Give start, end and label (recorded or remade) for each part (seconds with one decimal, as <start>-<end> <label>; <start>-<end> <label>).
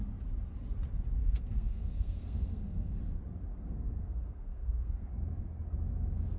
0.0-1.2 recorded; 1.2-3.0 remade; 3.0-3.5 recorded; 3.5-5.1 remade; 5.1-6.4 recorded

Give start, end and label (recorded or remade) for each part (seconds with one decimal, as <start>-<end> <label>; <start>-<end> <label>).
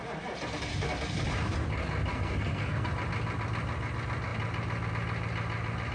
0.0-2.1 recorded; 2.1-2.9 remade; 2.9-5.9 recorded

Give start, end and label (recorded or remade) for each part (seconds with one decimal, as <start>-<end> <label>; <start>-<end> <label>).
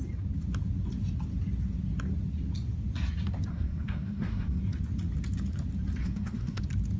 0.0-3.5 recorded; 3.5-4.6 remade; 4.6-6.0 recorded; 6.0-6.6 remade; 6.6-7.0 recorded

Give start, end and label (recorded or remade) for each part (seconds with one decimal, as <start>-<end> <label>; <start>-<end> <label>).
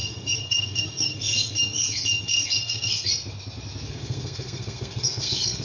0.0-3.1 remade; 3.1-3.9 recorded; 3.9-5.6 remade